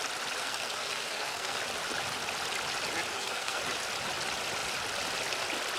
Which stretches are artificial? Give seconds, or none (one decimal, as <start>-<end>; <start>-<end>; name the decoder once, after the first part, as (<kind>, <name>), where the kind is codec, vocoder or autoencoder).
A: 0.4-1.6 (codec, SNAC); 3.1-3.6